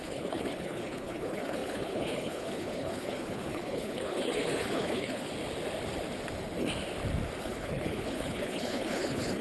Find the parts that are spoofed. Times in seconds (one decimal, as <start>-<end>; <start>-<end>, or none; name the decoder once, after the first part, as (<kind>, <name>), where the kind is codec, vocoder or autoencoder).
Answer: 0.0-5.3 (codec, HILCodec); 7.4-9.4